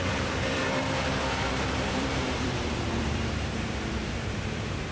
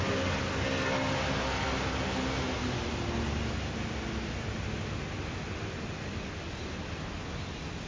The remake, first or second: first